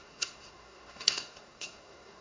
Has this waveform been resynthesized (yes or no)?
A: yes